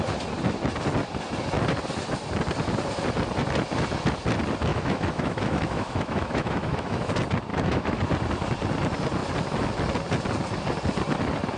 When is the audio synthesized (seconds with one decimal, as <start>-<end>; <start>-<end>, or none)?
4.7-7.1; 7.5-8.0